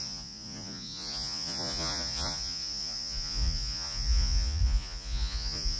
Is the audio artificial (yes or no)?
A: yes